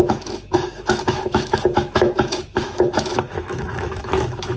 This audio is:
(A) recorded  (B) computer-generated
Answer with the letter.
B